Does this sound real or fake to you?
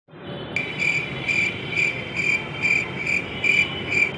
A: real